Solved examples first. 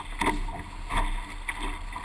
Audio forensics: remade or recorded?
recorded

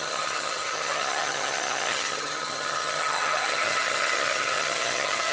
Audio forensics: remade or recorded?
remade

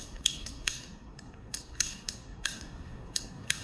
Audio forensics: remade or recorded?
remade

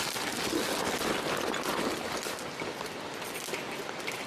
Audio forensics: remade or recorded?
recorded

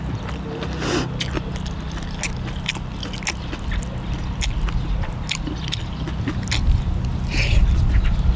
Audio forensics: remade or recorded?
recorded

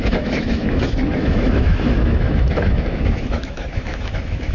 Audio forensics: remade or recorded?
remade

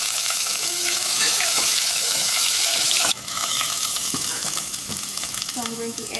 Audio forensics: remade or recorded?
remade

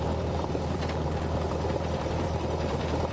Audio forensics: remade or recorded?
remade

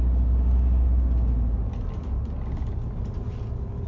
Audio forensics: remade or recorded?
recorded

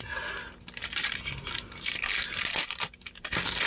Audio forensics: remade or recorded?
recorded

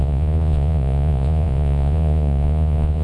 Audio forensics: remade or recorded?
remade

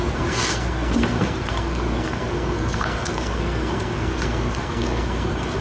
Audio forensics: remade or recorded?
remade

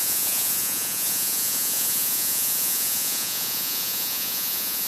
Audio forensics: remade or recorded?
remade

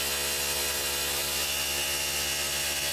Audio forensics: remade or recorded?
recorded